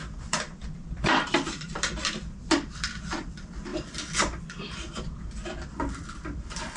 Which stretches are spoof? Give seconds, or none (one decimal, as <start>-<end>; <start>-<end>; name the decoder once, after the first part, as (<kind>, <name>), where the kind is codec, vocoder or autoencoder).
0.0-6.8 (vocoder, BigVGAN v2)